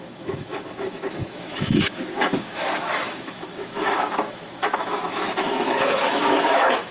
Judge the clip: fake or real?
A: fake